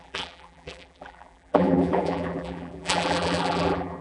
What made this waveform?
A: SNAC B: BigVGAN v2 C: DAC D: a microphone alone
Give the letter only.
B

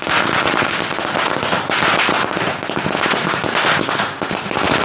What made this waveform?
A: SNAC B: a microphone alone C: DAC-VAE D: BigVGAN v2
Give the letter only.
B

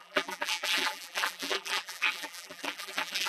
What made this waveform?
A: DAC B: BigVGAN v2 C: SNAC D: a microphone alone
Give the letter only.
B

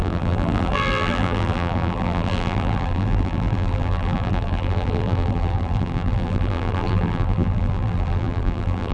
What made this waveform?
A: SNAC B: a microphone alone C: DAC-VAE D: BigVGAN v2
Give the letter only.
D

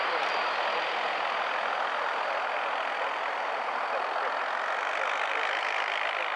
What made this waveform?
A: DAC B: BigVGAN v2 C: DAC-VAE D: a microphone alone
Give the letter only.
B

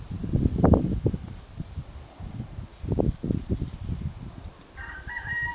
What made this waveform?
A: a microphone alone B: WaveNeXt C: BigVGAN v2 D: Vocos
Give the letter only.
C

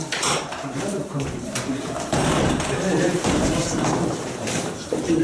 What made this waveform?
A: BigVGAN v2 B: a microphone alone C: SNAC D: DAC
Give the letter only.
A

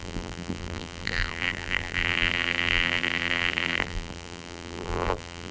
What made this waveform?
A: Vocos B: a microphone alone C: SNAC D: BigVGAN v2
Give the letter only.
D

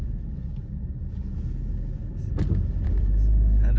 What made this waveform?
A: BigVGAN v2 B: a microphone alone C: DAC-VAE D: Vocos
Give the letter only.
B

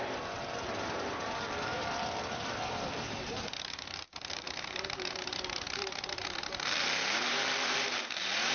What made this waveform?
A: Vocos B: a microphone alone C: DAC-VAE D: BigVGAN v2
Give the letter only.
D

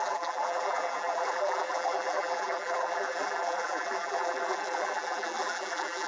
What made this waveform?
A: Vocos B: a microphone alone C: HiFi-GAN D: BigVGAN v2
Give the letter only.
D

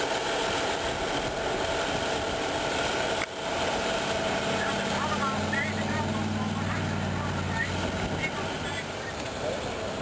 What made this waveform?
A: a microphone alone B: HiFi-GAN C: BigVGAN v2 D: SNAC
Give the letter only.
A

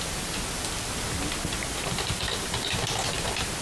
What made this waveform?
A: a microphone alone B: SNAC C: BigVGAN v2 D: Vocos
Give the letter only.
A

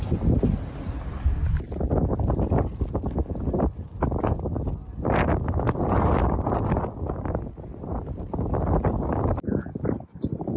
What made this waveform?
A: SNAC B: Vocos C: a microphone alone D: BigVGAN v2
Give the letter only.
C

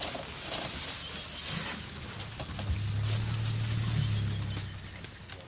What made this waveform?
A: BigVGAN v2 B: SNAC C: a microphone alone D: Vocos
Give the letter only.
C